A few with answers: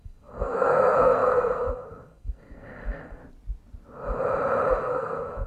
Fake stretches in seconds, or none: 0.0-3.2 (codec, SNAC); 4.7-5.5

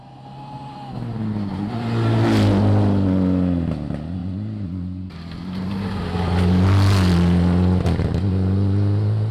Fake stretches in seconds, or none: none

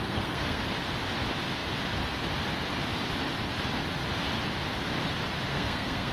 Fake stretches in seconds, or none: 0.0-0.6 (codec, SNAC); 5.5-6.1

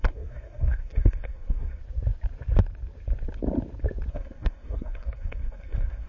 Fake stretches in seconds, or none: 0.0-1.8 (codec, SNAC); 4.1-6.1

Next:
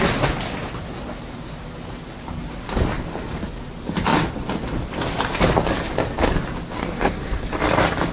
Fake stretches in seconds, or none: 6.8-7.5 (codec, SNAC)

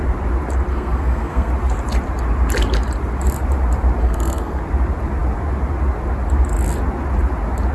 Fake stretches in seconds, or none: 0.7-1.5 (codec, SNAC); 4.0-4.6